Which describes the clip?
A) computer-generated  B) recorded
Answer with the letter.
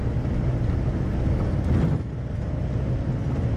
B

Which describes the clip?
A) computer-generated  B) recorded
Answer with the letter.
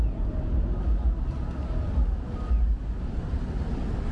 B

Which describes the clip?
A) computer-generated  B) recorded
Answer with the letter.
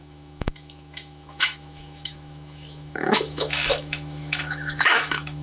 A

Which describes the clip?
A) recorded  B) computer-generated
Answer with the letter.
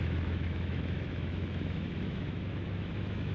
B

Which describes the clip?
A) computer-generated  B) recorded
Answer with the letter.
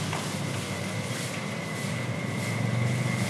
B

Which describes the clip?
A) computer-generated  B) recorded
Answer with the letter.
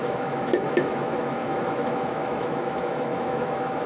A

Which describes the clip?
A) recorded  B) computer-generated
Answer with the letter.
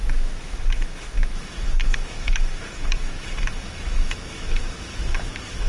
B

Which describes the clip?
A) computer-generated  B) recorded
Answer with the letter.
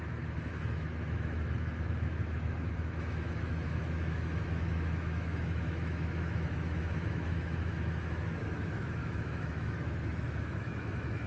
A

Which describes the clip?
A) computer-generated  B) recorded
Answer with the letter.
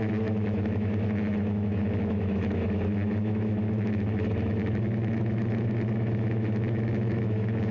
A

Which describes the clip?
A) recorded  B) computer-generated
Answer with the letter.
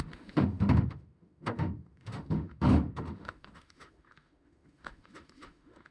B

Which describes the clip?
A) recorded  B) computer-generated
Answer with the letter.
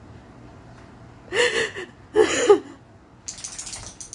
A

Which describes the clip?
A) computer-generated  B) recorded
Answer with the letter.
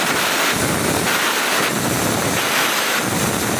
B